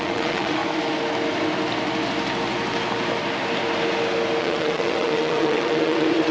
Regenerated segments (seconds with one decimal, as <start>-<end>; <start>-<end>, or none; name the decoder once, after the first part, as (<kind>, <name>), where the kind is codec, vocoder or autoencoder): 0.0-0.6 (vocoder, WaveNeXt); 4.4-6.3